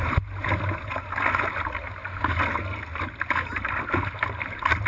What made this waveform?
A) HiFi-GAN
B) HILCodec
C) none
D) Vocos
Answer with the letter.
C